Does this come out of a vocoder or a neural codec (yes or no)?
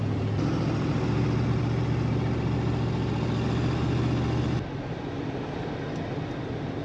no